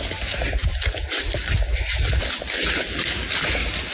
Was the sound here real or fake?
real